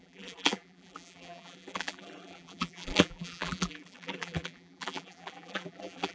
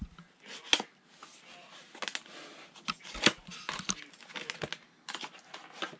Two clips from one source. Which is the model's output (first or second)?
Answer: first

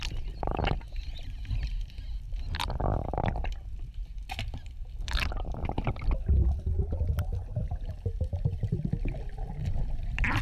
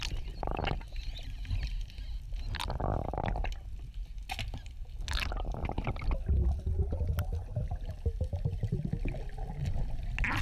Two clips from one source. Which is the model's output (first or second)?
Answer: first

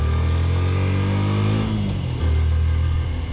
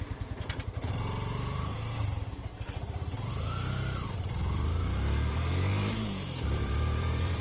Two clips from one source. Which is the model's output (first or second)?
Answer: second